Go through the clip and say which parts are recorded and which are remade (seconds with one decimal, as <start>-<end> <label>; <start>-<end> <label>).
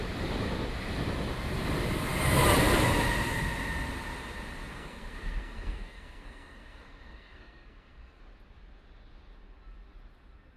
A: 0.0-4.7 recorded; 4.7-8.2 remade; 8.2-10.6 recorded